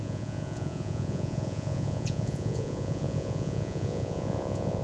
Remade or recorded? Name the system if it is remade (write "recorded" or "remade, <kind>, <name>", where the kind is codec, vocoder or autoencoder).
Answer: remade, vocoder, Vocos